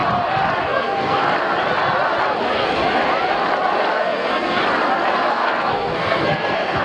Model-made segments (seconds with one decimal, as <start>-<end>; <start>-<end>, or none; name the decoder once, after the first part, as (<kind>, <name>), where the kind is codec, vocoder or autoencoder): 0.6-1.3 (codec, SNAC); 2.4-2.8; 3.9-4.6; 5.3-6.8